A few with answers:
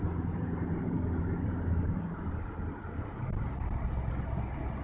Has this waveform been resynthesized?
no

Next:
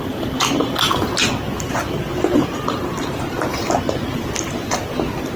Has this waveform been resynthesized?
no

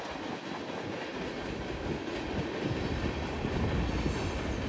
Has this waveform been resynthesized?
no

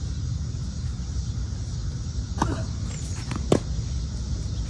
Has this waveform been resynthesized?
no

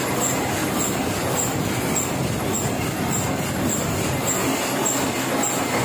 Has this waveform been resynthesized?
no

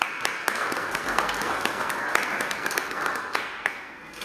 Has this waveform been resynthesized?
yes